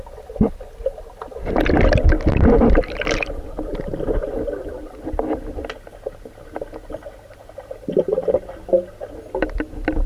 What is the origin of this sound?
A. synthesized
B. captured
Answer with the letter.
B